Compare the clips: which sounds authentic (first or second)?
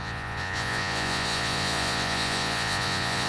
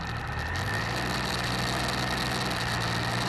second